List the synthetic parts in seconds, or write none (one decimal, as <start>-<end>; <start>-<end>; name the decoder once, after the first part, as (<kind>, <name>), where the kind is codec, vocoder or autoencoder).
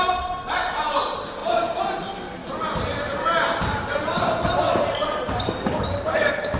0.0-1.4 (vocoder, BigVGAN v2); 1.9-6.6